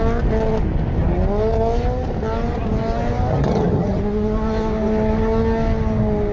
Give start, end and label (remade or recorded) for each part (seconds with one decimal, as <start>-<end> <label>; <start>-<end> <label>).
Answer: 0.0-3.3 recorded; 3.3-4.0 remade; 4.0-6.3 recorded